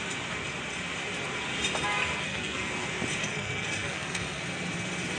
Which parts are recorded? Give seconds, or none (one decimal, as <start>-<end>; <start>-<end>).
0.0-2.1; 2.7-3.2; 4.4-5.2